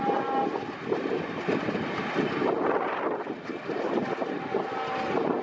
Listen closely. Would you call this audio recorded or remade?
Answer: recorded